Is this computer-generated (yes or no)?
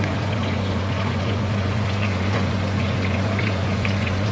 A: yes